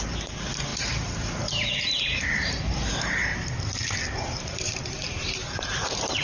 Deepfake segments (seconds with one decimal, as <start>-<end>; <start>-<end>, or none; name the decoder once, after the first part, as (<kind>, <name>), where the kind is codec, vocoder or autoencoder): 0.0-6.2 (vocoder, BigVGAN v2)